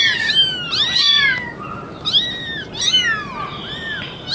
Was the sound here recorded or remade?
recorded